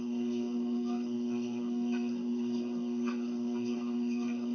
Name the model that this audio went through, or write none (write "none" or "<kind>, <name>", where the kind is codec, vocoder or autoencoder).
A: codec, SNAC